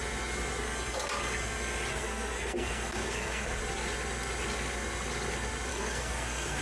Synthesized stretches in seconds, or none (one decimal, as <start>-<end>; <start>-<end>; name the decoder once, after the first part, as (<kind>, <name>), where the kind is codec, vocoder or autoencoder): 1.9-3.6 (codec, SNAC); 5.7-6.6